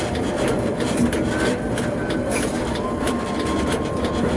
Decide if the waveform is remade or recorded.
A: remade